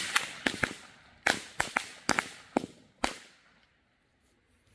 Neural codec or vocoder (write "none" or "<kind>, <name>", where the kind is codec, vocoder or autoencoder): none